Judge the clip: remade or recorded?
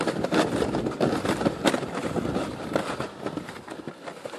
recorded